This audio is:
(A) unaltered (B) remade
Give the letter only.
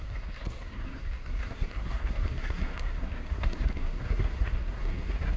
B